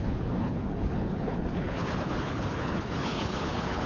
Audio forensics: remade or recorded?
remade